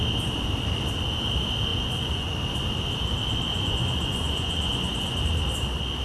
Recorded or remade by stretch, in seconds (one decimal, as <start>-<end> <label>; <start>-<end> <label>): 0.0-1.7 recorded; 1.7-2.3 remade; 2.3-3.5 recorded; 3.5-5.2 remade; 5.2-6.0 recorded